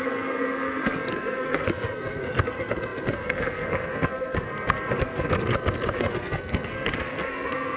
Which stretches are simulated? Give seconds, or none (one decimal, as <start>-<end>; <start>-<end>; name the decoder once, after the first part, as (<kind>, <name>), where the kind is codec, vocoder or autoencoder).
0.0-5.3 (codec, SNAC); 5.9-7.8